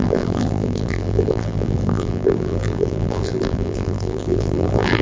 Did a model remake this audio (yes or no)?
yes